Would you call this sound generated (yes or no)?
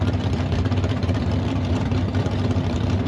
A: yes